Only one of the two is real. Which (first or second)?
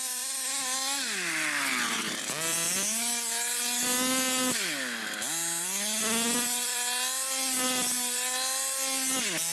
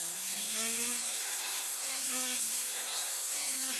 first